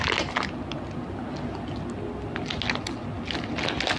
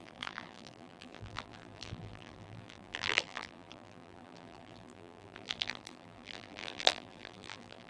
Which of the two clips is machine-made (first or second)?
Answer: second